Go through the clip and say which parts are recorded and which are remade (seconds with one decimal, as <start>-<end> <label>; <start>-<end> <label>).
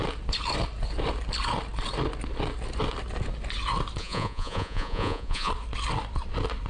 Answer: 0.0-4.0 recorded; 4.0-5.5 remade; 5.5-6.7 recorded